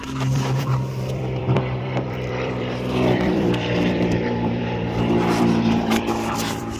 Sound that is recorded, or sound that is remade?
remade